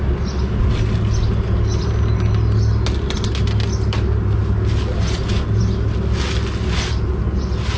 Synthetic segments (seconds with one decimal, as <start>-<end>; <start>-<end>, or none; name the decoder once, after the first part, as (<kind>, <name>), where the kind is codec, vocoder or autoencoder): none